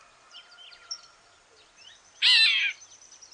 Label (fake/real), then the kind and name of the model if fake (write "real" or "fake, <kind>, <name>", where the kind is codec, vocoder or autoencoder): real